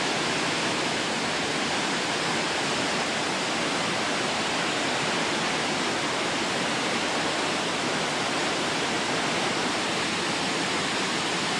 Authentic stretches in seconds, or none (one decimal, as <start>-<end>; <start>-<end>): 0.0-11.6